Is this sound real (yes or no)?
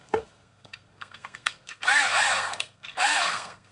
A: no